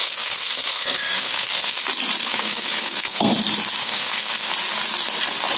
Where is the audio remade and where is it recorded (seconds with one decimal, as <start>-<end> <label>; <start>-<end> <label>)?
0.0-1.8 remade; 1.8-2.2 recorded; 2.2-3.3 remade; 3.3-3.8 recorded; 3.8-4.5 remade; 4.5-5.6 recorded